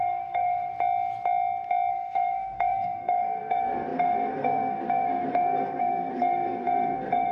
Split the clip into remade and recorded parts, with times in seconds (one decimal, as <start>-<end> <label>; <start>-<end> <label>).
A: 0.0-0.7 remade; 0.7-1.9 recorded; 1.9-7.3 remade